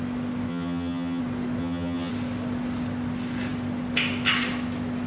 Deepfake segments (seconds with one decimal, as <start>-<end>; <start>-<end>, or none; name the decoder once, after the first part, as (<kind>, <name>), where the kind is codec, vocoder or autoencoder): 0.5-1.2 (vocoder, HiFi-GAN); 1.6-2.1